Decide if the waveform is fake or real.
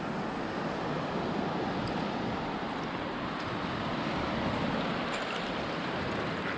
real